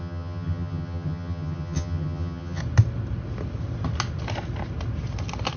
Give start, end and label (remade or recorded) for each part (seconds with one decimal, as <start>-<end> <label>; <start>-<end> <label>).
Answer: 0.0-2.6 remade; 2.6-5.6 recorded